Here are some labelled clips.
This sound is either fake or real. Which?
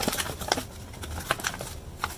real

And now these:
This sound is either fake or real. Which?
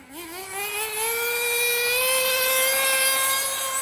real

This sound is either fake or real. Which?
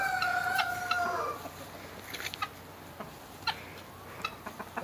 real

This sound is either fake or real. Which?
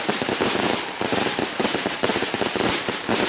fake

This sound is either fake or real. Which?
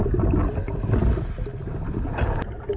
real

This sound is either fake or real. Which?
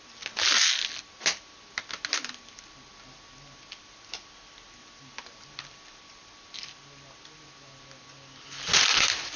real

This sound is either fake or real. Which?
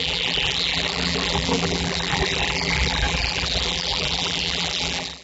fake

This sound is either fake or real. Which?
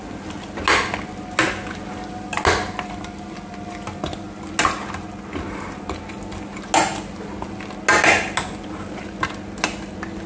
real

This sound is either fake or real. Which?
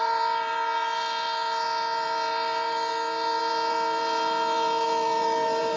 fake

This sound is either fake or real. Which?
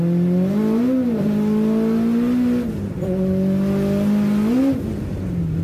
real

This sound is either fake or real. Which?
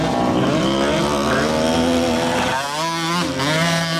real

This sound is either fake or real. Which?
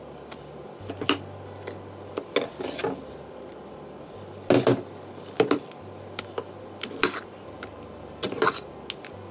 real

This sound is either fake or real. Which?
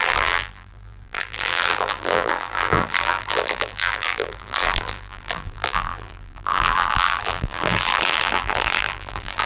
fake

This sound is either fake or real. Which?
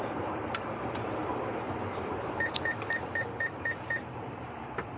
fake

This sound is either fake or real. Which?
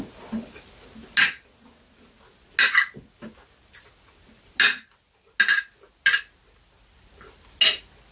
real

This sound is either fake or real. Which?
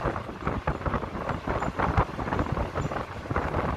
real